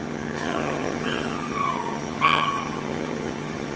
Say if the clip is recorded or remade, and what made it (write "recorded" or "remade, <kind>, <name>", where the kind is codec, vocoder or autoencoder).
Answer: remade, vocoder, HiFi-GAN